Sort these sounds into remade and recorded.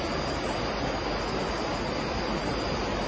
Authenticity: recorded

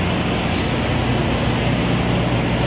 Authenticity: recorded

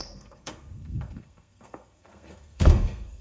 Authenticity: remade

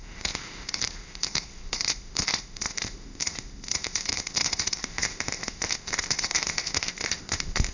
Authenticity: remade